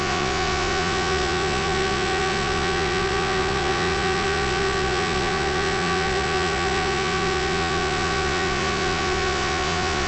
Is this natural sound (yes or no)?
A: no